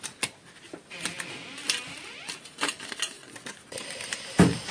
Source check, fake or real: real